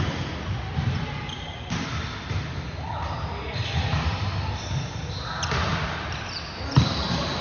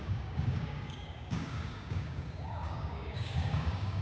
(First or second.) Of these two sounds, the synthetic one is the second